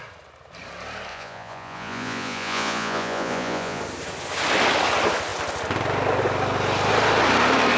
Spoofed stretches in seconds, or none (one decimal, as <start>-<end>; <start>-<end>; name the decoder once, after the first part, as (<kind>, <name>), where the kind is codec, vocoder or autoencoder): 1.1-3.8 (vocoder, Vocos)